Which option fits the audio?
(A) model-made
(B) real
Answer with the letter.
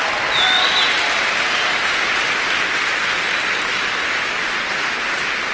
B